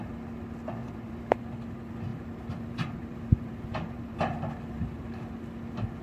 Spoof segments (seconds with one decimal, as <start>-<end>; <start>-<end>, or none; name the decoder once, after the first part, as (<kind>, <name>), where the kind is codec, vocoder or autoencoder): 0.8-1.4 (vocoder, BigVGAN v2); 2.1-4.1